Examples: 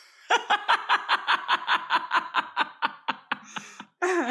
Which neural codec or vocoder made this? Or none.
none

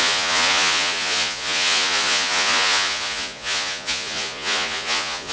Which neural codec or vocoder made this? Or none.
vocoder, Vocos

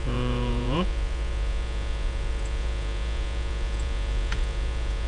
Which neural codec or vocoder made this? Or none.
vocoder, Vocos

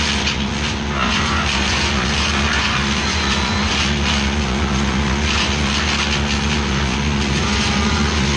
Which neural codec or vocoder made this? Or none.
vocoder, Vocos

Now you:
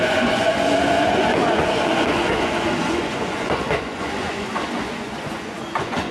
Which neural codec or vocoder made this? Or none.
vocoder, Vocos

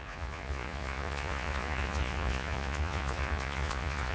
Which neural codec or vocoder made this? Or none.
vocoder, Vocos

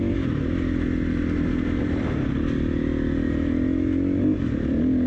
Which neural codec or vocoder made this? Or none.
none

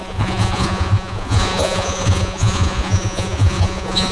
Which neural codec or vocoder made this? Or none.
vocoder, Vocos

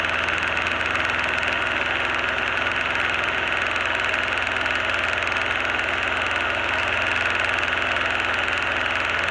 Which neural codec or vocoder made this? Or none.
none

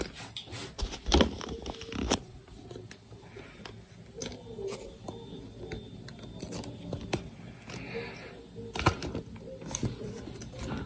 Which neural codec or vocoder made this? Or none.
none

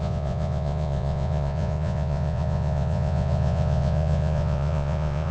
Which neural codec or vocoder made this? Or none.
vocoder, Vocos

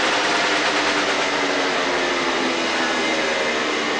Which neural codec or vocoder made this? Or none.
none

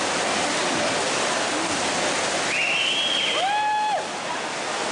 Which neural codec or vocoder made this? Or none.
none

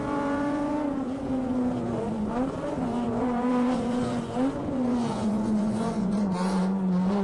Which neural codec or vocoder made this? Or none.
vocoder, Vocos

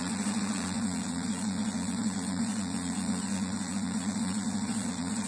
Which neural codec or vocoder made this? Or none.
vocoder, Vocos